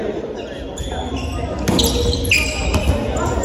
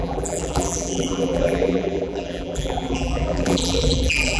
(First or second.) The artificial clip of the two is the second